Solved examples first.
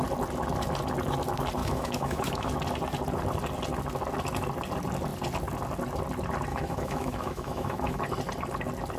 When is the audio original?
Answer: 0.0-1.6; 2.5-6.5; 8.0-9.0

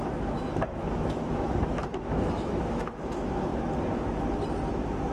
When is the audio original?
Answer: 3.5-5.1

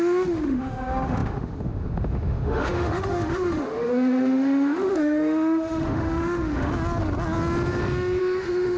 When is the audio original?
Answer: 6.7-8.2

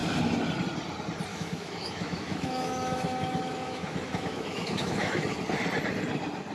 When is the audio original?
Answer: 0.0-1.3; 5.2-6.5

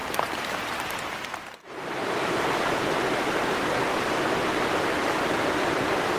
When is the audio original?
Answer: 0.0-6.2

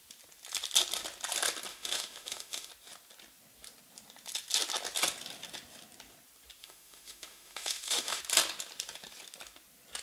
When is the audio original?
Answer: 0.0-1.7; 2.7-6.6; 8.2-10.0

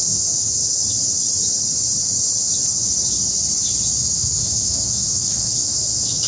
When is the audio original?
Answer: 0.6-4.0

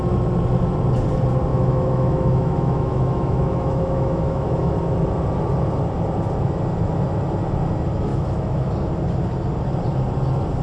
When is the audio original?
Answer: 0.0-1.5; 4.7-8.1; 8.7-10.6